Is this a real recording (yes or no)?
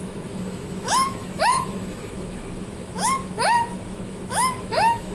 no